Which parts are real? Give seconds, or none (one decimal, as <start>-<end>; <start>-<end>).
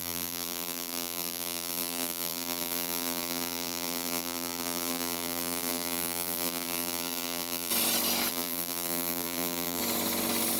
7.7-8.3; 9.8-10.6